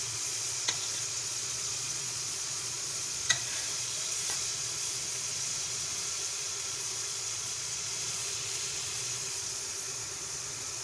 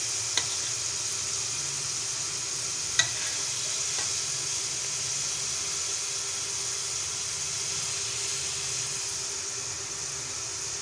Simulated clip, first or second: first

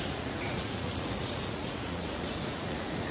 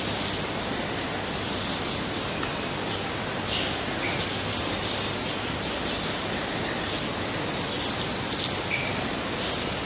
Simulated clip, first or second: first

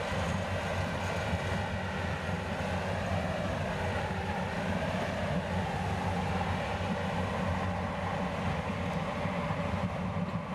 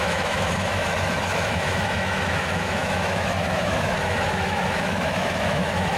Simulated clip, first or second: second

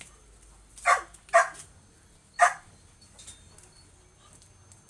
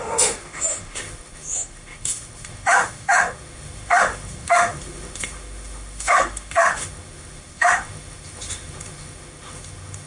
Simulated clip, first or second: second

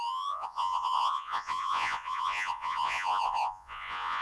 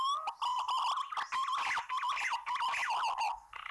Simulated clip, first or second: first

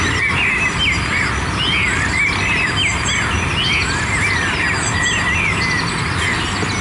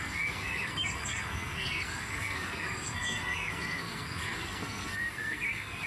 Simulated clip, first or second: second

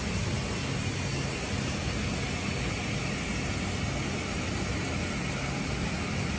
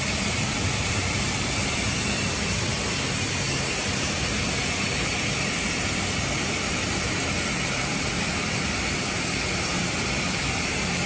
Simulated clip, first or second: second